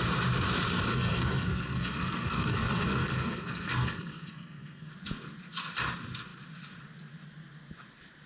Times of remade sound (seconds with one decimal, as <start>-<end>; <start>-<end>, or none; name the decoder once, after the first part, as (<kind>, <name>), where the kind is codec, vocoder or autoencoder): 0.9-4.9 (codec, SNAC)